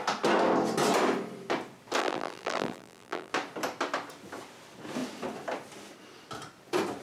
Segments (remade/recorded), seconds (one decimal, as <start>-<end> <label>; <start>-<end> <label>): 0.0-2.0 recorded; 2.0-3.3 remade; 3.3-7.0 recorded